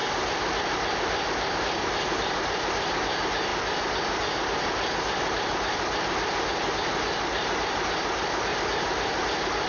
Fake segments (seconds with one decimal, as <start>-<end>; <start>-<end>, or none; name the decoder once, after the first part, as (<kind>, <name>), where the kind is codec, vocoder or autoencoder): none